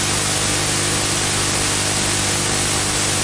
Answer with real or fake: real